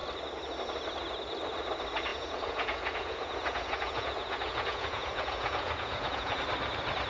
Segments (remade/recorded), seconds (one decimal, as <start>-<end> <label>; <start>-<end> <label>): 0.0-2.1 recorded; 2.1-6.4 remade; 6.4-7.1 recorded

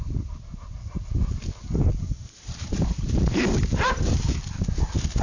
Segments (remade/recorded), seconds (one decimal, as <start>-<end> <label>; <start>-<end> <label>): 0.0-2.2 recorded; 2.2-4.2 remade; 4.2-5.2 recorded

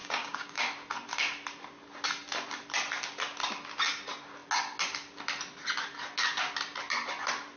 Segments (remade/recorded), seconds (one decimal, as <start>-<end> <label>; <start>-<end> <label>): 0.0-0.7 remade; 0.7-7.6 recorded

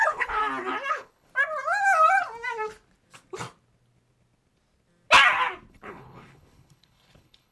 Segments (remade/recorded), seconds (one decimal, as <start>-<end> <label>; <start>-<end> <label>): 0.0-0.4 remade; 0.4-0.9 recorded; 0.9-1.3 remade; 1.3-5.7 recorded; 5.7-7.5 remade

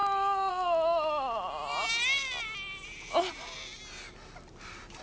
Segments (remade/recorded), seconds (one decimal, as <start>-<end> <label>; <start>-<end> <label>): 0.0-5.0 recorded

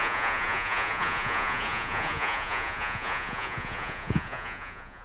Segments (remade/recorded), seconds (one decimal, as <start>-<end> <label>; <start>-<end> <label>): 0.0-5.0 remade

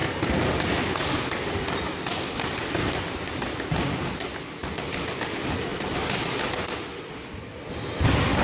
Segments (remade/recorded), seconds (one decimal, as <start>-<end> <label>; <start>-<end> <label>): 0.0-8.4 recorded